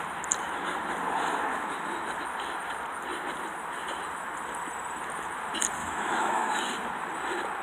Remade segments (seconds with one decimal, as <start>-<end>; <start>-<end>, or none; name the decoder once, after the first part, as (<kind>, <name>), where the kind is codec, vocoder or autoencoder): 5.8-6.6 (autoencoder, DAC-VAE)